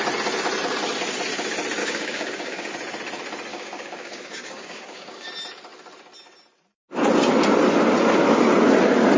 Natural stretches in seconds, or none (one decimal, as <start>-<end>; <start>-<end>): 0.0-1.8; 2.7-3.5; 5.3-9.2